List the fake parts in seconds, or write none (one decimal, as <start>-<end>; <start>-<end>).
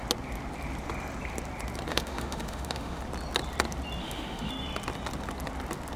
1.9-3.0; 4.0-4.5